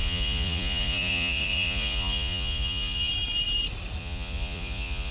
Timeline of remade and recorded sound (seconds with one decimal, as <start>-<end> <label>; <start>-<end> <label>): 0.0-3.1 remade; 3.1-4.0 recorded; 4.0-5.1 remade